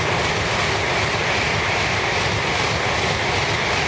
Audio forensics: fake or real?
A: real